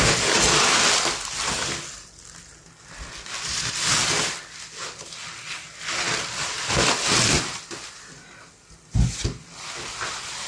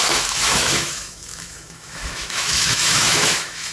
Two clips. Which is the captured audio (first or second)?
first